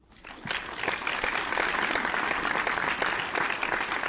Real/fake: real